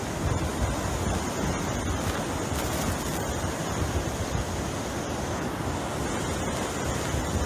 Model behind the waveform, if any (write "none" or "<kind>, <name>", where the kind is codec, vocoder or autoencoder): none